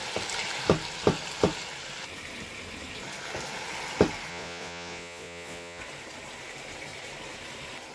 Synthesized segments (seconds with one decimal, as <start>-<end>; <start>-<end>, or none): 4.3-5.8